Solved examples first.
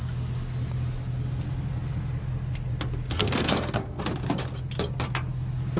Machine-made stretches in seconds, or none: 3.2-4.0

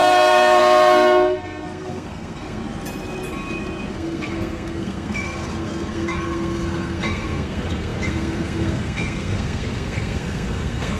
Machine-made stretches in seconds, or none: 0.0-2.6; 3.9-11.0